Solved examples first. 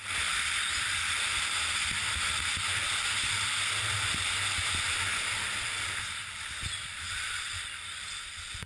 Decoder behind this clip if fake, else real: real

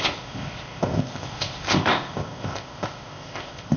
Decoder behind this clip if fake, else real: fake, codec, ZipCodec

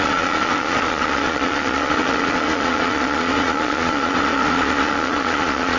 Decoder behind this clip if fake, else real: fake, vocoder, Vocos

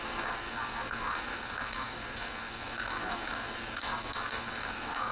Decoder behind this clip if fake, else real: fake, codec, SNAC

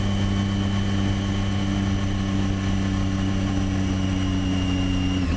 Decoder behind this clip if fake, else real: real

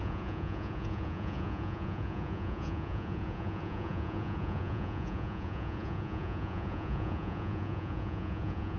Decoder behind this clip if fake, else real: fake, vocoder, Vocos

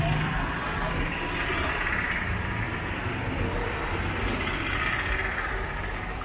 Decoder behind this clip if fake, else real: real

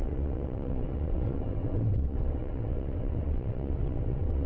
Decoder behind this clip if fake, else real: fake, vocoder, WaveNeXt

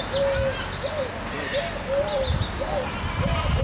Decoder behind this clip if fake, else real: real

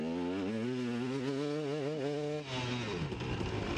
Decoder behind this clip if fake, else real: real